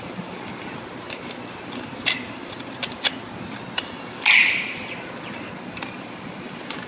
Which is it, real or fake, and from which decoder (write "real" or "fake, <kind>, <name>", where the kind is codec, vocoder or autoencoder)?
real